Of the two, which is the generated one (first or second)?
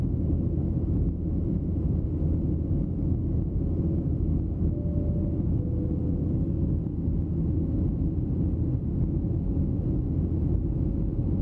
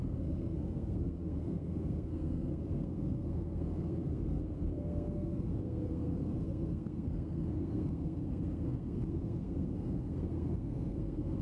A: second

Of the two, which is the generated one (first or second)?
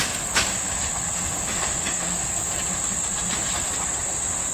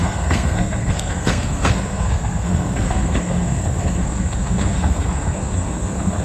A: second